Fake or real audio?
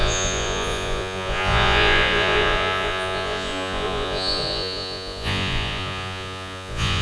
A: fake